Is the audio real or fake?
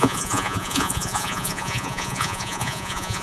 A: fake